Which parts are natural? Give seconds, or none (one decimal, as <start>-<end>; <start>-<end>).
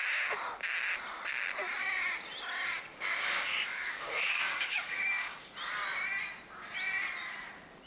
0.0-2.9; 5.5-7.9